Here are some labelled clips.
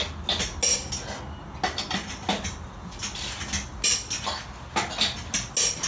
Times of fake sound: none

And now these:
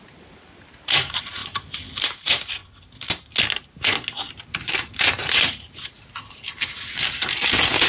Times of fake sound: 0.0-1.4 (vocoder, BigVGAN v2); 2.0-2.6; 4.3-7.9